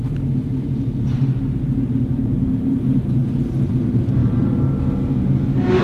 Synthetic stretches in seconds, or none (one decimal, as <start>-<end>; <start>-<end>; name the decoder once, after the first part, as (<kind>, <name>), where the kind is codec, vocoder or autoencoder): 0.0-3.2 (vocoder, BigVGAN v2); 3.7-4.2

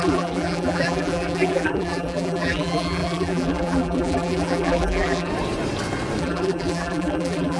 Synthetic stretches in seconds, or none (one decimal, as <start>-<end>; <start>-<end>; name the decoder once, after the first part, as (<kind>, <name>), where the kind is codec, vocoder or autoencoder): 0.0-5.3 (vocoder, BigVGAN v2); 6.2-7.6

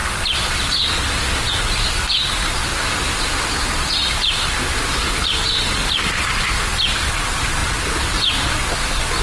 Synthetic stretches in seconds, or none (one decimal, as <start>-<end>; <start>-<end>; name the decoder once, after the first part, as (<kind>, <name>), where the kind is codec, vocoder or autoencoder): 4.0-6.1 (vocoder, BigVGAN v2)

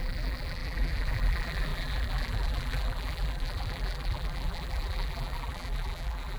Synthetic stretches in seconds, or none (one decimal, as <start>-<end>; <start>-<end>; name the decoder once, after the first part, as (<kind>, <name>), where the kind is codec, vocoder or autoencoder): 0.0-6.4 (vocoder, BigVGAN v2)

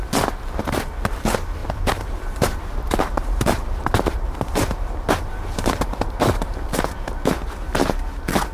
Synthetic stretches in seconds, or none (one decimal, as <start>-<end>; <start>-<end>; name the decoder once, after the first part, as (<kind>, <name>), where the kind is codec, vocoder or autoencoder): 1.6-6.7 (vocoder, BigVGAN v2)